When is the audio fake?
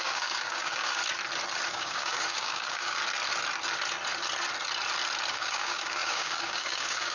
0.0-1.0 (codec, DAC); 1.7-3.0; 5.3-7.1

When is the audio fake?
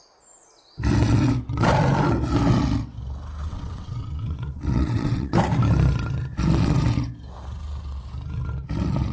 3.4-5.3 (vocoder, WaveNeXt)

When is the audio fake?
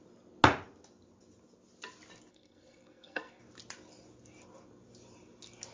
2.3-3.4 (codec, SNAC)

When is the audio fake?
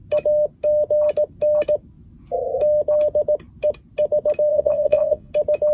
4.5-5.3 (vocoder, Vocos)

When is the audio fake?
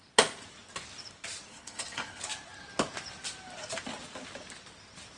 1.5-2.2 (codec, HILCodec)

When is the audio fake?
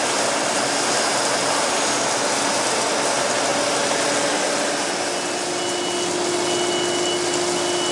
none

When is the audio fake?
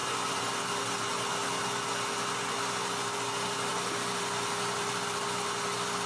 none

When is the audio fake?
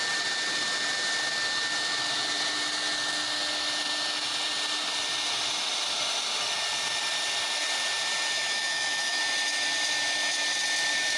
8.3-9.2 (autoencoder, DAC-VAE)